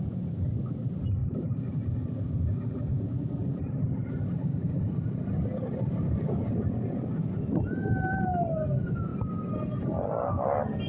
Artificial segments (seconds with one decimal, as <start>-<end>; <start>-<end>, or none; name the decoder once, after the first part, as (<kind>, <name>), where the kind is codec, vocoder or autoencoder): 1.2-2.1 (vocoder, BigVGAN v2); 3.4-6.0